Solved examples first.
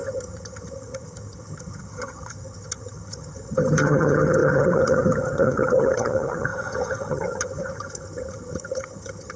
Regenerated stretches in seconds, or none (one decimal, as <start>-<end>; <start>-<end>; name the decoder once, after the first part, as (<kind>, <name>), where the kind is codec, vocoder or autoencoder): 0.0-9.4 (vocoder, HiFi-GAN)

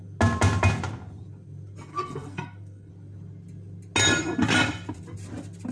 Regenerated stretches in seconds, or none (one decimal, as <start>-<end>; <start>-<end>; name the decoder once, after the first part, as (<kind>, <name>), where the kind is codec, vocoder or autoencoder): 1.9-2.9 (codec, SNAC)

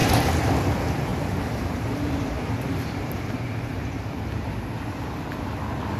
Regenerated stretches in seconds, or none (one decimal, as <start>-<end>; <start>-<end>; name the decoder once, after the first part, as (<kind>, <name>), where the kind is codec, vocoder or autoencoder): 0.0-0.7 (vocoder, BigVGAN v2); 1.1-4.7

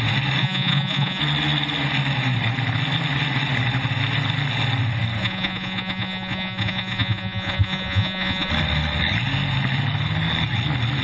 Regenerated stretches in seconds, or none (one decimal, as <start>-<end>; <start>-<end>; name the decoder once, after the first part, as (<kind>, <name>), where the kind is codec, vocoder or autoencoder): 0.4-1.2 (vocoder, Vocos); 5.2-8.5